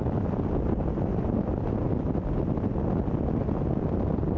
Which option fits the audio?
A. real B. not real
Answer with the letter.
A